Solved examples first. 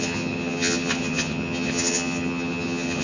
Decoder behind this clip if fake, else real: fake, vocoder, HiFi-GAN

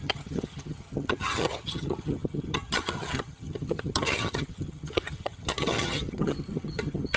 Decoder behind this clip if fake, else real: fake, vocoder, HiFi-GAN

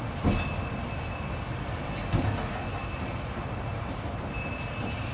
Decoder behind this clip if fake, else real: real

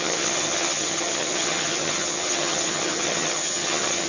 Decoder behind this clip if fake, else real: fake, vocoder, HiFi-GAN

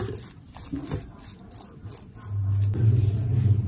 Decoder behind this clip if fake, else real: real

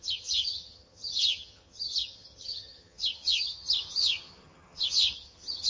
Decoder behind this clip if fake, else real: fake, vocoder, HiFi-GAN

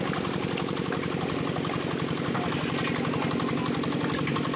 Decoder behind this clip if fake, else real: real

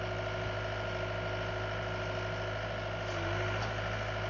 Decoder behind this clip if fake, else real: real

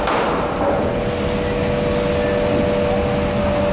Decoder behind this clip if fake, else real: real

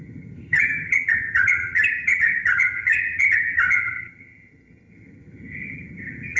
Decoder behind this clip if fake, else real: fake, vocoder, HiFi-GAN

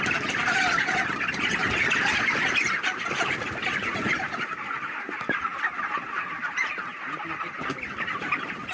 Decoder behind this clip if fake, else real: real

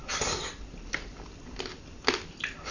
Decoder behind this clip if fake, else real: real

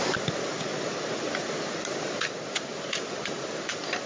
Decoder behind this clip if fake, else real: real